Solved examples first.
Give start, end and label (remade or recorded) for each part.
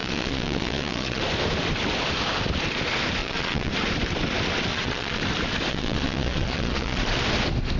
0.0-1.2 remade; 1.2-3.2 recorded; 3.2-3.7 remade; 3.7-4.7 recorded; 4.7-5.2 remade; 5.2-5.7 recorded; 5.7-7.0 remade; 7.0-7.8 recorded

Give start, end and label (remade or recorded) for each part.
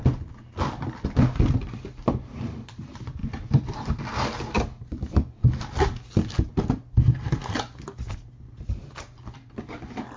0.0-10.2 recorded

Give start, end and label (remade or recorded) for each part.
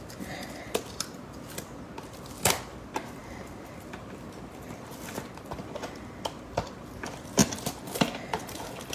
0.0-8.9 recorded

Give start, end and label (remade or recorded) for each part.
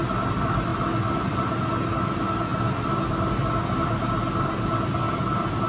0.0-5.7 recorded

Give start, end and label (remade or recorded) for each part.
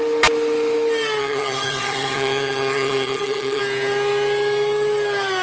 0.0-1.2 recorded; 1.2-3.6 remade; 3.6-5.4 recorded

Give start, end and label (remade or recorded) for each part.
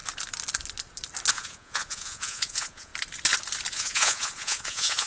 0.0-1.3 recorded; 1.3-2.9 remade; 2.9-3.7 recorded; 3.7-5.1 remade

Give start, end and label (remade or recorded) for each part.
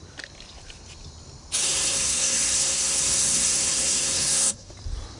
0.0-1.6 recorded; 1.6-4.7 remade; 4.7-5.2 recorded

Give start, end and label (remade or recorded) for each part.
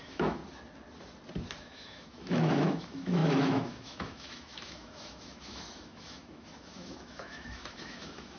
0.0-0.4 remade; 0.4-1.6 recorded; 1.6-8.4 remade